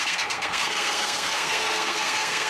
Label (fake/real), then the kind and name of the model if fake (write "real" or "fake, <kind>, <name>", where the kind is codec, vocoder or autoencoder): fake, codec, SNAC